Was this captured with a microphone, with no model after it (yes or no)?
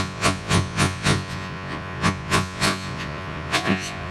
no